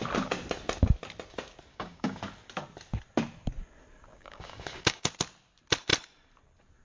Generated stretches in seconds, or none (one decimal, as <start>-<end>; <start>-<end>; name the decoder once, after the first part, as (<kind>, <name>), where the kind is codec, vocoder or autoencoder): 1.7-2.2 (codec, DAC); 4.1-5.1